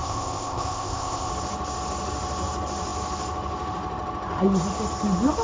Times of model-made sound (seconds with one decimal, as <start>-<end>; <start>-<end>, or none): 0.0-1.3